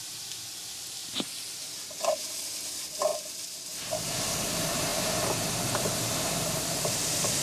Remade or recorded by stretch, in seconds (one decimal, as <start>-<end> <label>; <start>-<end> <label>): 0.0-1.0 remade; 1.0-2.7 recorded; 2.7-3.1 remade; 3.1-3.9 recorded; 3.9-4.9 remade; 4.9-5.8 recorded; 5.8-7.4 remade